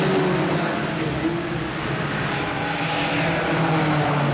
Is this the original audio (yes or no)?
yes